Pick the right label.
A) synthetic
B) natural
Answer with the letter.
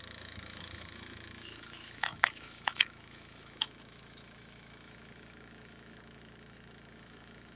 A